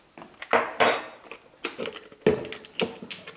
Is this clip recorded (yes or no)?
yes